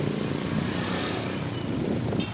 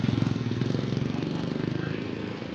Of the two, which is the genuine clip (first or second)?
first